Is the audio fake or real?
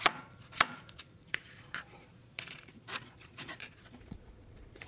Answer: fake